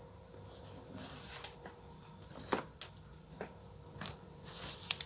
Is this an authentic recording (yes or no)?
yes